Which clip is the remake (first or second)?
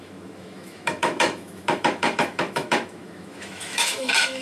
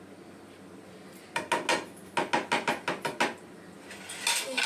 first